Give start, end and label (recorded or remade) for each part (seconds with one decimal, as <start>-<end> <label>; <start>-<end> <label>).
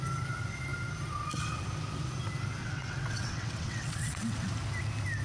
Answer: 0.0-2.6 recorded; 2.6-4.5 remade; 4.5-5.2 recorded